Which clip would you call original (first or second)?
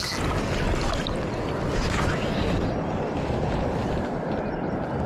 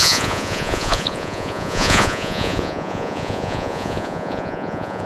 first